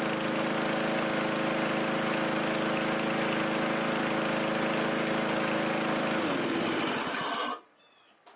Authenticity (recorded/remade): recorded